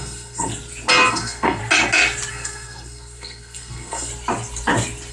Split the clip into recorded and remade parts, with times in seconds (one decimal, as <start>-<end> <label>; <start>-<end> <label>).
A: 0.0-0.5 remade; 0.5-1.1 recorded; 1.1-1.6 remade; 1.6-2.3 recorded; 2.3-4.1 remade; 4.1-5.1 recorded